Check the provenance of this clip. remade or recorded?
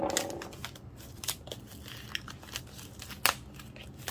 recorded